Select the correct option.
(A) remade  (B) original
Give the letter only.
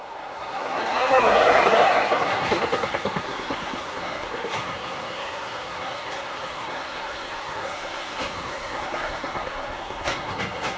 A